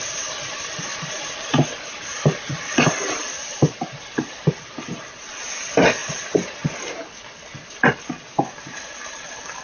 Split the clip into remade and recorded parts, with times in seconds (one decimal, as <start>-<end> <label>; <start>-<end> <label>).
0.0-9.6 recorded